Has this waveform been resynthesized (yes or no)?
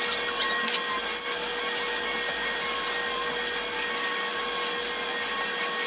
no